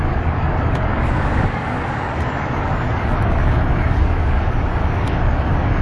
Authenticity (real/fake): fake